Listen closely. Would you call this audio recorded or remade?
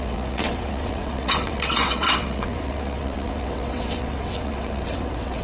remade